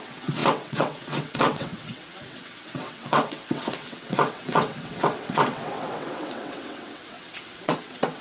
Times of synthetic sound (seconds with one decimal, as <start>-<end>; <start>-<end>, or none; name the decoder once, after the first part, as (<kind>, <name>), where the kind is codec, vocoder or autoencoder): 0.0-8.2 (vocoder, WaveNeXt)